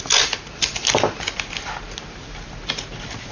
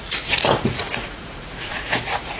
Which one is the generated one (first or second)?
second